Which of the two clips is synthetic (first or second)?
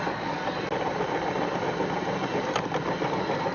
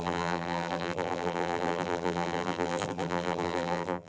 second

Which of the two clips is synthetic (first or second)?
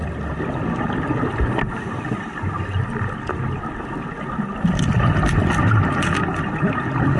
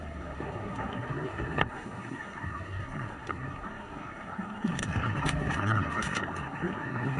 second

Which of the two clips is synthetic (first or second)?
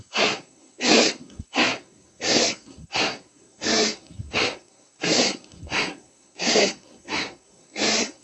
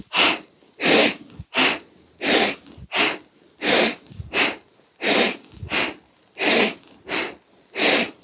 first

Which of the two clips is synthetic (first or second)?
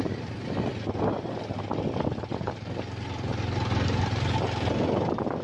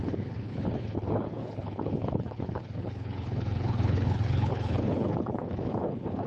second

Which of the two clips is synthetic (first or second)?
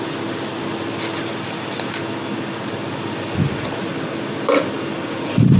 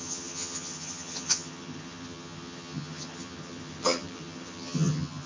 second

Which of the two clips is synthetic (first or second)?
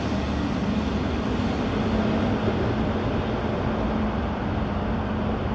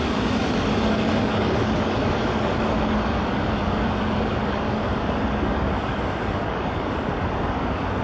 second